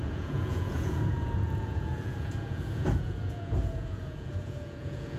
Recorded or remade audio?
remade